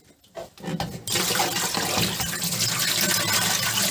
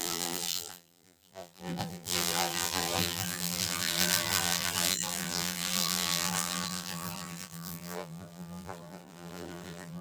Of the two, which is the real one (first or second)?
first